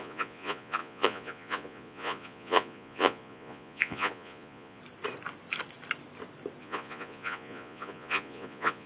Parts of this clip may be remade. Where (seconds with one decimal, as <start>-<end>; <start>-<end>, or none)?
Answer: 0.0-4.8; 6.6-8.9